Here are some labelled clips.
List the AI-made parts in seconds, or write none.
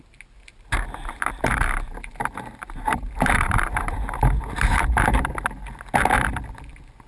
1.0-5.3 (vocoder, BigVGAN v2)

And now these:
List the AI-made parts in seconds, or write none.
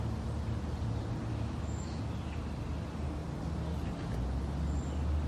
1.3-2.0 (autoencoder, DAC-VAE)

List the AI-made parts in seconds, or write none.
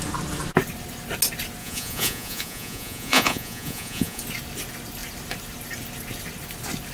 1.6-4.2 (vocoder, Vocos)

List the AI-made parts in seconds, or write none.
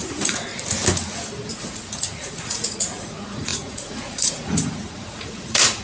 0.0-0.5 (vocoder, Vocos); 1.5-5.8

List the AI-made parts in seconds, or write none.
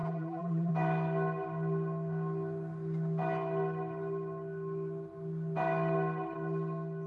0.0-0.7 (vocoder, BigVGAN v2)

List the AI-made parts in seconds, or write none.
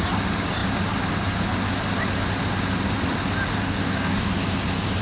3.5-4.3 (codec, DAC)